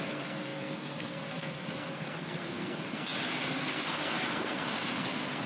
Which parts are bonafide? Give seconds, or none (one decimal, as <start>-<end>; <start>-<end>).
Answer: none